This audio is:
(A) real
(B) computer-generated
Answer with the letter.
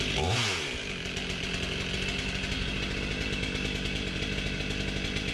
A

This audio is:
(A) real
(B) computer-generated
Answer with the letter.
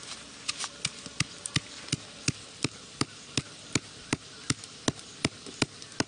A